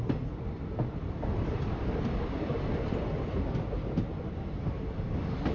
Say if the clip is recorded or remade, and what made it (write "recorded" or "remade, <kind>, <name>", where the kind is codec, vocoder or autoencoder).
recorded